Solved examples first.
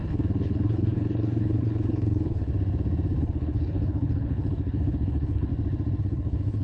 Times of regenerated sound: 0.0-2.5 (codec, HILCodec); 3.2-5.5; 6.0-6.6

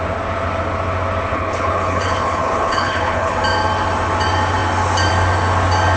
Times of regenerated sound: 1.3-3.3 (codec, HILCodec)

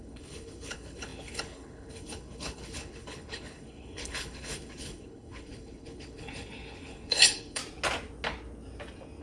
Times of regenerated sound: 0.0-7.6 (codec, HILCodec)

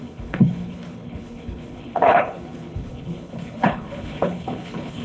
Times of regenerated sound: 0.0-5.0 (codec, HILCodec)